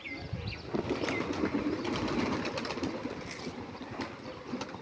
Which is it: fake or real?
real